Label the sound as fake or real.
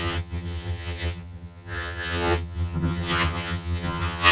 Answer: fake